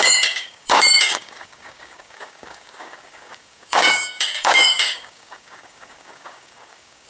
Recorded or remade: remade